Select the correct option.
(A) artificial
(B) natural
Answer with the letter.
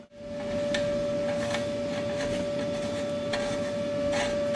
B